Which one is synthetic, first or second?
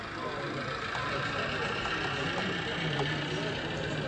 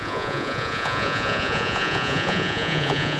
second